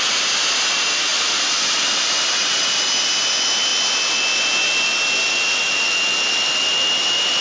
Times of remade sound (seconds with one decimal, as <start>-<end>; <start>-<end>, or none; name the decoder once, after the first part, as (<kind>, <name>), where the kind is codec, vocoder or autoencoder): none